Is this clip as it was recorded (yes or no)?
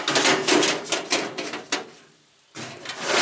yes